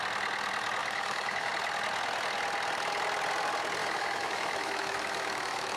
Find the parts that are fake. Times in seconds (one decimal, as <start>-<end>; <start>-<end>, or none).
0.8-1.5; 3.8-5.8